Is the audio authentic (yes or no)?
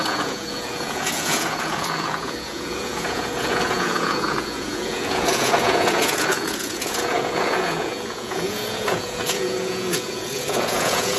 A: no